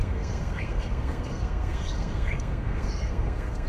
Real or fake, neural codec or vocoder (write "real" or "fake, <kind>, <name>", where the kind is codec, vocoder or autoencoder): fake, codec, SNAC